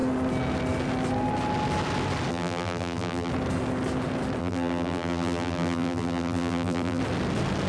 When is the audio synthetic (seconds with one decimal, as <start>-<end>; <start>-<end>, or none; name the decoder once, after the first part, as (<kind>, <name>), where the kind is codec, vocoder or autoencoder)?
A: 2.3-3.3 (vocoder, BigVGAN v2); 4.4-7.0